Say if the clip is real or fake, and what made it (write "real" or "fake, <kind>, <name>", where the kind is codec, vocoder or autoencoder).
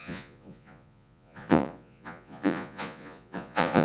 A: fake, vocoder, Vocos